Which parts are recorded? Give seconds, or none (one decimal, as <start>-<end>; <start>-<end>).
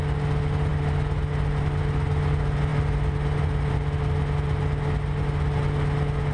0.0-6.3